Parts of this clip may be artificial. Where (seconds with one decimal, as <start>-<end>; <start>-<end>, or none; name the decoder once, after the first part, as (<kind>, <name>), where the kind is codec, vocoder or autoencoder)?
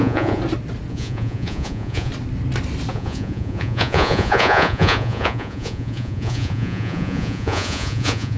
0.0-0.4 (vocoder, Vocos); 0.9-2.1; 2.9-8.4